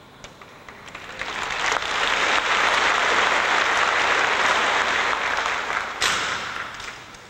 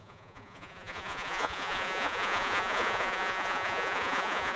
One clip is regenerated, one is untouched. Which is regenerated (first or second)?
second